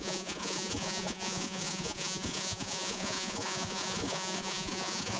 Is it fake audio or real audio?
fake